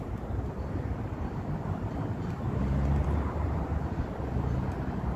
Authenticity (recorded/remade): remade